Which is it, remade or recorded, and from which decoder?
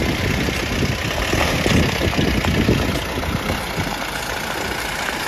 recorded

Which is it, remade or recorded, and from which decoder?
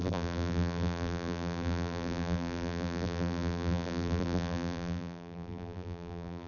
remade, vocoder, BigVGAN v2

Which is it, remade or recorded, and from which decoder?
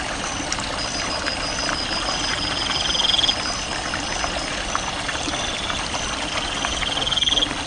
recorded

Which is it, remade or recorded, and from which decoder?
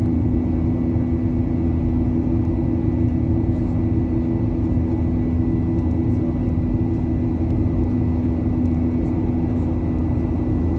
recorded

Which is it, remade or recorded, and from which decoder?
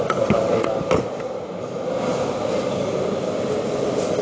recorded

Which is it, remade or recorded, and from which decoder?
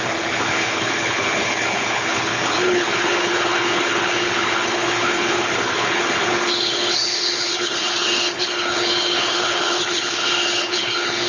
remade, codec, HILCodec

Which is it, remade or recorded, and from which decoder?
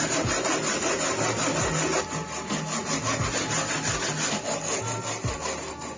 recorded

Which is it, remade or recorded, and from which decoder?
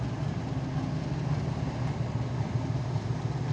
recorded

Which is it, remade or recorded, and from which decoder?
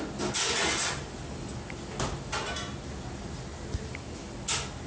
recorded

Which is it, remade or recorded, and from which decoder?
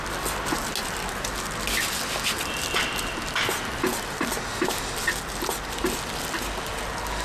recorded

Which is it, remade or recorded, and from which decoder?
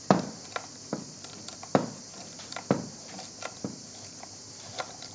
remade, vocoder, BigVGAN v2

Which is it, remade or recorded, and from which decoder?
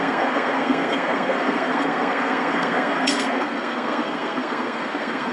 remade, codec, SNAC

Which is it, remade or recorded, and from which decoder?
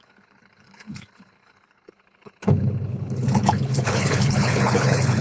remade, codec, HILCodec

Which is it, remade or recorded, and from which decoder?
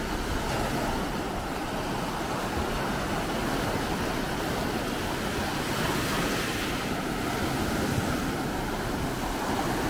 recorded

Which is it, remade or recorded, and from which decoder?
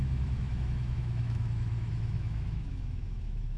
remade, autoencoder, DAC-VAE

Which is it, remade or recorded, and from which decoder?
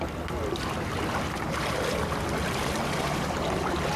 recorded